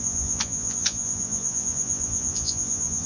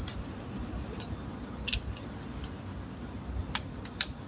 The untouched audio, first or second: second